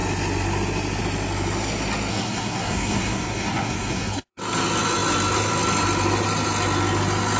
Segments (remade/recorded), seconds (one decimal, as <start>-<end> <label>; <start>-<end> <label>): 0.0-2.1 recorded; 2.1-4.4 remade; 4.4-7.4 recorded